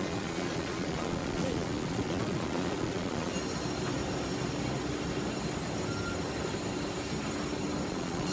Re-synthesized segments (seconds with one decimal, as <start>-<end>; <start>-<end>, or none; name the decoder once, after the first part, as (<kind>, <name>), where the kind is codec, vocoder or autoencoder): 0.0-3.3 (vocoder, Vocos); 7.9-8.3